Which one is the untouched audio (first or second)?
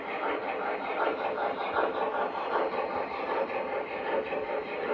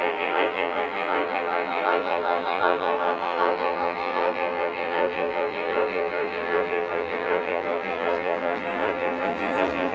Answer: first